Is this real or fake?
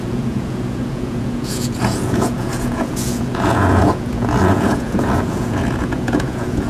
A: fake